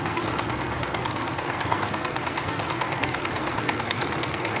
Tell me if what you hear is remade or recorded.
remade